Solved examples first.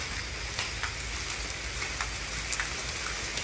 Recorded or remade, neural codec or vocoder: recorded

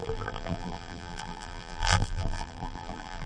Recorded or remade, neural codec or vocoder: remade, vocoder, BigVGAN v2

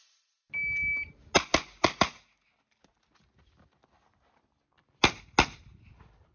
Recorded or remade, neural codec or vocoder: recorded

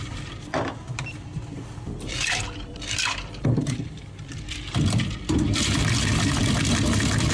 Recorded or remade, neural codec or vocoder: remade, vocoder, BigVGAN v2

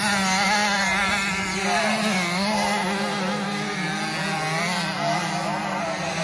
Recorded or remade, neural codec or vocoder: recorded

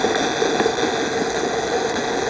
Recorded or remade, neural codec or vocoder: remade, vocoder, BigVGAN v2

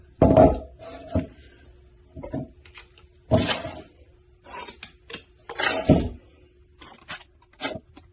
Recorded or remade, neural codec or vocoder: recorded